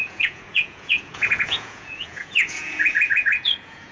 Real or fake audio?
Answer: fake